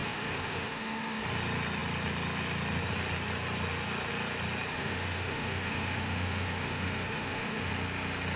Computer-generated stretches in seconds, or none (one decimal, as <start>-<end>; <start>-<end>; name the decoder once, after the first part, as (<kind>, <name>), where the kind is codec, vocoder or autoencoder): 0.0-1.2 (autoencoder, DAC-VAE); 4.7-7.7